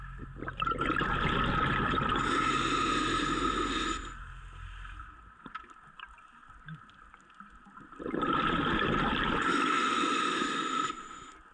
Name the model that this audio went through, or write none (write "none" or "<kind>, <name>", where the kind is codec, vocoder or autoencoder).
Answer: none